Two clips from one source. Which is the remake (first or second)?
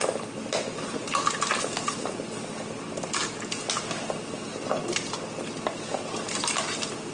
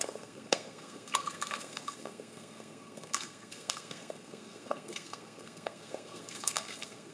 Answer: second